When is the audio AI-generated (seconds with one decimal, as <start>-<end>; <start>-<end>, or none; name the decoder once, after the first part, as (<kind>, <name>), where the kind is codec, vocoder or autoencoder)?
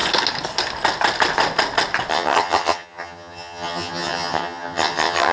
2.1-5.3 (vocoder, HiFi-GAN)